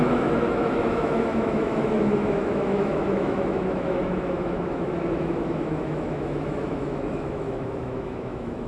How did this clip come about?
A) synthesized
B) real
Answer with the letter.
A